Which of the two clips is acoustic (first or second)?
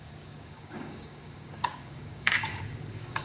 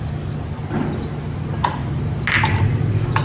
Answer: second